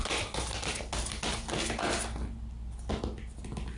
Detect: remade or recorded recorded